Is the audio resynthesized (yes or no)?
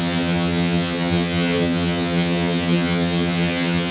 yes